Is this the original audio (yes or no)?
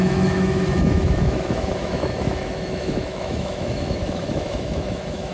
no